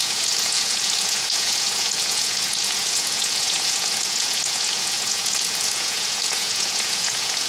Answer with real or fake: fake